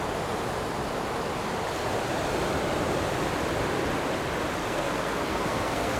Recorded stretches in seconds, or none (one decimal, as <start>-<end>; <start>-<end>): 0.0-4.6